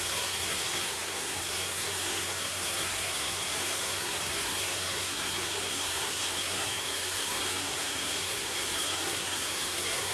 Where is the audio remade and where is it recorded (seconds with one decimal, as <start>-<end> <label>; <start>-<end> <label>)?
0.0-10.1 remade